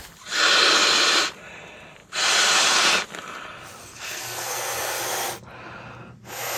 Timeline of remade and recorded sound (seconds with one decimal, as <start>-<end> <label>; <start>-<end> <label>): 0.0-3.8 recorded; 3.8-5.0 remade; 5.0-6.6 recorded

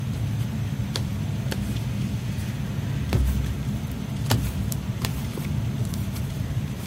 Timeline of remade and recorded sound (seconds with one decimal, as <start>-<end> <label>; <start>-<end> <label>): 0.0-1.1 remade; 1.1-2.0 recorded; 2.0-2.4 remade; 2.4-4.6 recorded; 4.6-5.1 remade; 5.1-5.8 recorded; 5.8-6.9 remade

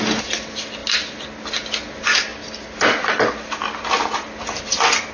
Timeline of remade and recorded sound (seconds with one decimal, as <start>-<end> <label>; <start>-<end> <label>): 0.0-5.1 recorded

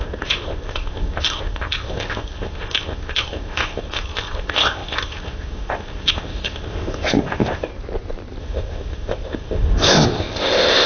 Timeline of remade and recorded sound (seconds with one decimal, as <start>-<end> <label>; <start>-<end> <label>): 0.0-7.7 remade; 7.7-8.4 recorded; 8.4-10.9 remade